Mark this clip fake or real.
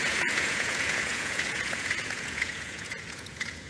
fake